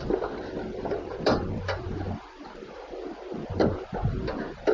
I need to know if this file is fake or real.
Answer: fake